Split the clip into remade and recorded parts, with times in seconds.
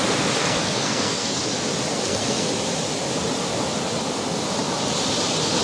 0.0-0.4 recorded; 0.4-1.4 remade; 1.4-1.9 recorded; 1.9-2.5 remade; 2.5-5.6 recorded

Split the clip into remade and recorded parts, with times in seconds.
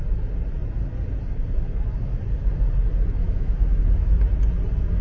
0.0-3.2 recorded; 3.2-3.8 remade; 3.8-5.0 recorded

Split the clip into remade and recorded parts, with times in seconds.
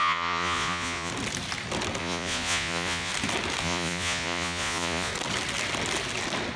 0.0-1.1 remade; 1.1-2.0 recorded; 2.0-3.1 remade; 3.1-3.6 recorded; 3.6-5.1 remade; 5.1-6.6 recorded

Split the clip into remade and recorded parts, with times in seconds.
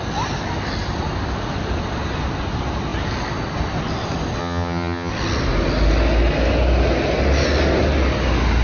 0.0-4.4 recorded; 4.4-5.1 remade; 5.1-8.6 recorded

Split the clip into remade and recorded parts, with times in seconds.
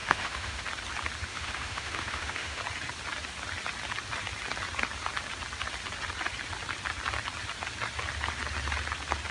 0.0-0.6 remade; 0.6-1.3 recorded; 1.3-2.6 remade; 2.6-9.3 recorded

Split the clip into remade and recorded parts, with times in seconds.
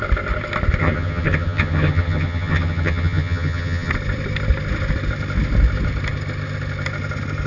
0.0-0.8 recorded; 0.8-3.9 remade; 3.9-7.5 recorded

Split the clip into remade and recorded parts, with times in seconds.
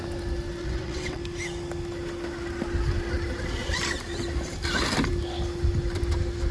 0.0-0.6 recorded; 0.6-1.2 remade; 1.2-6.5 recorded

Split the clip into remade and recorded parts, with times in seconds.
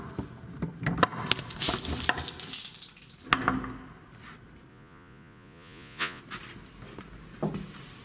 0.0-4.7 recorded; 4.7-6.2 remade; 6.2-8.0 recorded